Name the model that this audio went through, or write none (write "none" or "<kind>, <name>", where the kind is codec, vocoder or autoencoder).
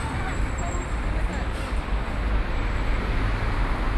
none